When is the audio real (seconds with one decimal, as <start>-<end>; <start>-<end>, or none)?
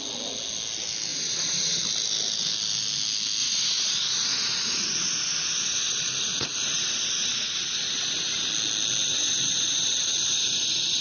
0.0-1.1; 1.8-3.4; 8.5-9.0